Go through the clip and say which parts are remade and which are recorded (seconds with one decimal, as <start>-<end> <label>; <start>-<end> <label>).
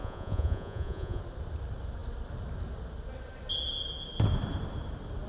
0.0-1.2 remade; 1.2-5.3 recorded